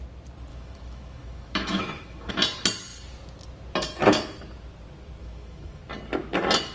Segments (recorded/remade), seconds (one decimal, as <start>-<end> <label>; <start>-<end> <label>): 0.0-0.5 recorded; 0.5-2.3 remade; 2.3-5.2 recorded; 5.2-5.8 remade; 5.8-6.7 recorded